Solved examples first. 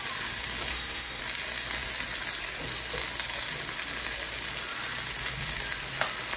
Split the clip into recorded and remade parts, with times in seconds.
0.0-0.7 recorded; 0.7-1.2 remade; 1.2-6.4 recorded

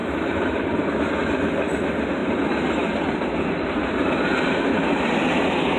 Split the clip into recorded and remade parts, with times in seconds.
0.0-0.8 remade; 0.8-5.8 recorded

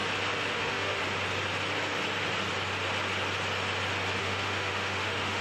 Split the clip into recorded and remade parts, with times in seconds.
0.0-0.5 recorded; 0.5-1.0 remade; 1.0-4.2 recorded; 4.2-5.4 remade